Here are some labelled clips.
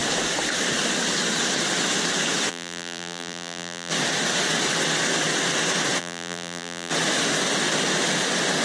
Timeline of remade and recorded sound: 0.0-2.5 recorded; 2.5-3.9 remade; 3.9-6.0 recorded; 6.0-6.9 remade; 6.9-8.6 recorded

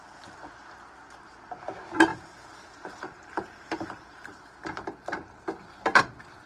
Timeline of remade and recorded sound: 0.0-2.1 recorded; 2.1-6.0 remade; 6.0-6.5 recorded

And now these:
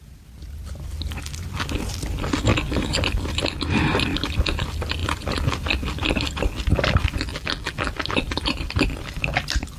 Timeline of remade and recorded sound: 0.0-7.3 recorded; 7.3-7.9 remade; 7.9-9.8 recorded